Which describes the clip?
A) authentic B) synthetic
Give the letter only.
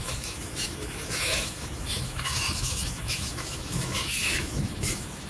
B